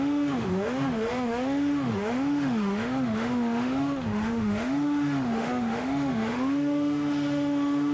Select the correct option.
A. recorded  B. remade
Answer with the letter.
B